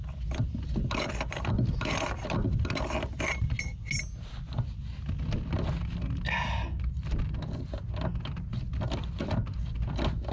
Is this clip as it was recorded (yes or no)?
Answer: yes